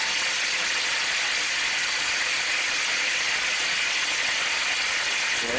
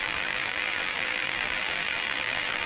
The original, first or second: first